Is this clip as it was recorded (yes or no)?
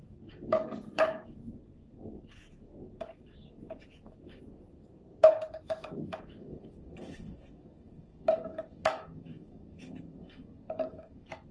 no